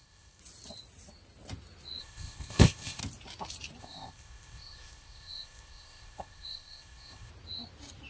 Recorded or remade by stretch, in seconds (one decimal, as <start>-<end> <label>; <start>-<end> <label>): 0.0-0.4 remade; 0.4-2.0 recorded; 2.0-3.0 remade; 3.0-3.8 recorded; 3.8-7.3 remade; 7.3-8.1 recorded